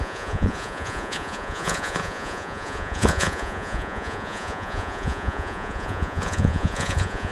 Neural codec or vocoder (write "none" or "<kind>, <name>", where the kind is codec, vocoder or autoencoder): vocoder, Vocos